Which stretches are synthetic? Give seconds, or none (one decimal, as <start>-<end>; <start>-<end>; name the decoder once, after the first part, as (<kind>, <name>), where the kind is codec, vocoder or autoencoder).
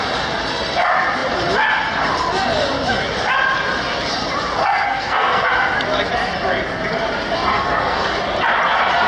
4.6-5.5 (codec, SNAC); 7.5-8.1